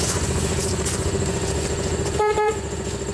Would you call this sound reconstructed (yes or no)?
yes